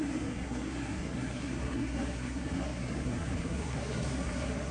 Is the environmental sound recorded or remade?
remade